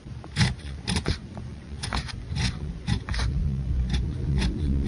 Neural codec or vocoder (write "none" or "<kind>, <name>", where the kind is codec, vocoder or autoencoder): vocoder, Vocos